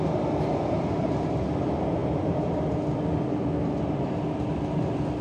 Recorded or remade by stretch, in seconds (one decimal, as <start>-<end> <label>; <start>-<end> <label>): 0.0-2.0 recorded; 2.0-2.8 remade; 2.8-5.2 recorded